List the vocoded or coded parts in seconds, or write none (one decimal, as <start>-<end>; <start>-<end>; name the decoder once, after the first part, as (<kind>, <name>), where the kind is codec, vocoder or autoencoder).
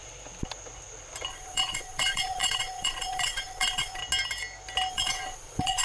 1.3-4.0 (vocoder, Vocos); 4.9-5.8